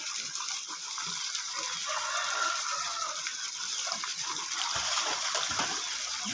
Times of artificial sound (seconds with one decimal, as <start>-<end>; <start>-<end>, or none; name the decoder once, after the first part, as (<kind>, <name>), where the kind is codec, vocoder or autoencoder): none